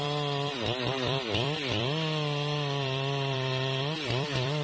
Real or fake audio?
fake